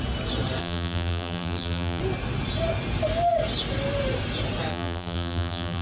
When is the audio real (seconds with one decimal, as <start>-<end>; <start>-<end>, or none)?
0.0-0.6; 2.0-4.7